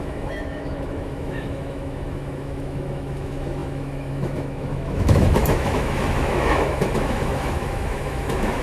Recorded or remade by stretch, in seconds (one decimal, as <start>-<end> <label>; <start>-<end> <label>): 0.0-8.6 remade